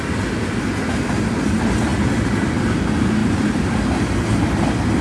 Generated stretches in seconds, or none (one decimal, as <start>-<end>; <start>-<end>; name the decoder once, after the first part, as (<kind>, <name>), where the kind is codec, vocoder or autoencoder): 3.2-3.9 (vocoder, BigVGAN v2)